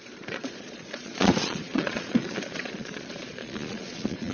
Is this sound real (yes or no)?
no